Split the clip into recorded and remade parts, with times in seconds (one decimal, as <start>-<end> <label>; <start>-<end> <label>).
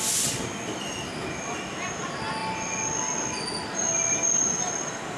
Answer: 0.0-5.2 recorded